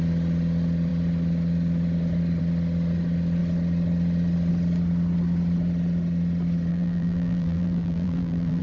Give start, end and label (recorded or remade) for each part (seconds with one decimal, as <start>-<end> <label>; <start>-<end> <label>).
0.0-6.7 recorded; 6.7-8.6 remade

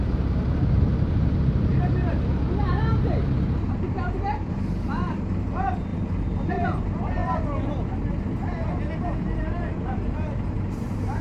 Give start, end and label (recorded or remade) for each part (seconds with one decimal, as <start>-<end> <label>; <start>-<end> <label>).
0.0-1.7 remade; 1.7-2.9 recorded; 2.9-5.9 remade; 5.9-6.5 recorded; 6.5-7.2 remade; 7.2-8.9 recorded; 8.9-11.2 remade

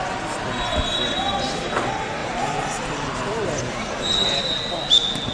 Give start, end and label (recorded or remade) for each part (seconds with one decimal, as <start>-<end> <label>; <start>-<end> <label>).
0.0-2.2 recorded; 2.2-4.4 remade; 4.4-5.3 recorded

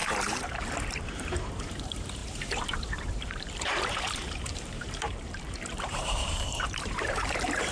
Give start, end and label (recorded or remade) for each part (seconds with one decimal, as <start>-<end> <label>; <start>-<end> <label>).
0.0-7.7 remade

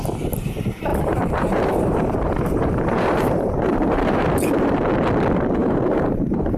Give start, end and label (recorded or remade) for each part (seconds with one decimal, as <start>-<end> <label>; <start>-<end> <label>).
0.0-0.9 recorded; 0.9-4.9 remade; 4.9-5.6 recorded; 5.6-6.6 remade

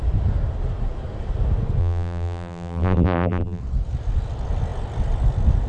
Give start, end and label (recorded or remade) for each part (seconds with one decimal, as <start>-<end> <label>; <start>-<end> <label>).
0.0-1.8 recorded; 1.8-3.6 remade; 3.6-5.7 recorded